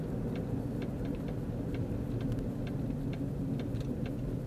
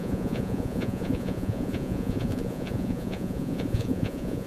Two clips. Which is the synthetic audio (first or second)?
second